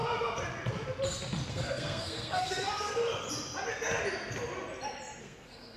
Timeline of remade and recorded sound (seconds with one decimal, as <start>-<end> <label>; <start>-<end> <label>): 0.0-1.5 recorded; 1.5-3.0 remade; 3.0-5.2 recorded; 5.2-5.8 remade